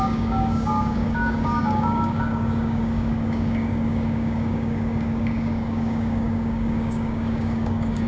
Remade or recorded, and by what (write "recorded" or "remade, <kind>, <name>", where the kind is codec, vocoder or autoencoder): remade, codec, DAC